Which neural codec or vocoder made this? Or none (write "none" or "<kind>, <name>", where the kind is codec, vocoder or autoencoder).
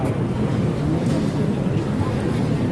none